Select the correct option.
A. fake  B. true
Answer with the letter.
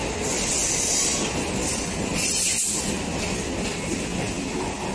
B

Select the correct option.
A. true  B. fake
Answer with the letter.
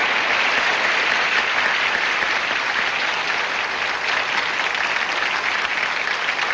A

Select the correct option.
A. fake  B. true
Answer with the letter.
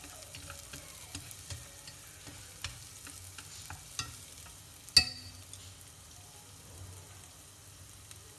B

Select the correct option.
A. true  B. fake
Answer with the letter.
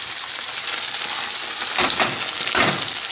A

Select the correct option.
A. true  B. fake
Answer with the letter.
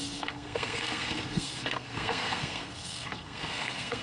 B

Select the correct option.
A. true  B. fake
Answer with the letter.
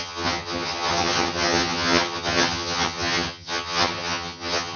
B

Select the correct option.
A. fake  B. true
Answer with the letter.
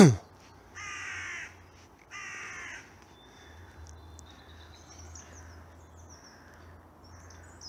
B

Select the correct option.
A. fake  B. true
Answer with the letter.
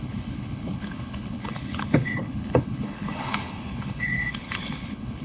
A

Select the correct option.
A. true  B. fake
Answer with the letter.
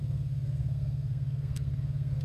B